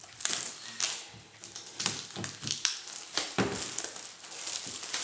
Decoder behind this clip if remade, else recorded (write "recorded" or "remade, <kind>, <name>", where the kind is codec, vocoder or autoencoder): recorded